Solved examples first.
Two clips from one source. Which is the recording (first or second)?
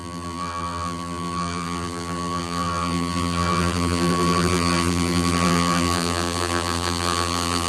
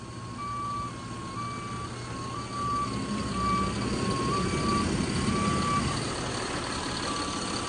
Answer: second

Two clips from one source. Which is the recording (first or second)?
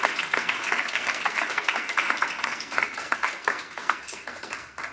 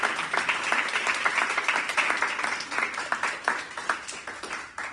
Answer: second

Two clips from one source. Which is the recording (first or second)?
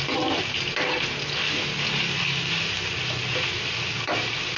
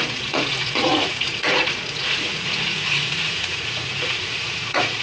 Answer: first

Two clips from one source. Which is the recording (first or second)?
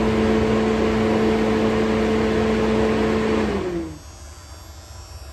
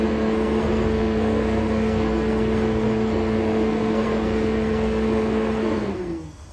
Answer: first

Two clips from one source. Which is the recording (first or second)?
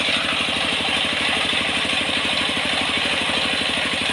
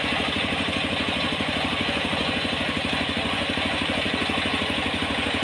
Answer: first